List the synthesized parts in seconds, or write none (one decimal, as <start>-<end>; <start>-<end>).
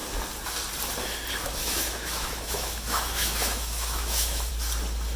1.4-4.5